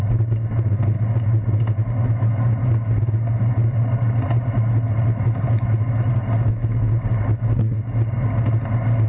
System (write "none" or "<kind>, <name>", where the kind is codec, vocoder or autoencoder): none